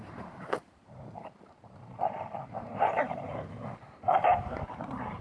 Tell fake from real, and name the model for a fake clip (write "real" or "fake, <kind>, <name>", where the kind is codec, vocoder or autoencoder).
fake, vocoder, BigVGAN v2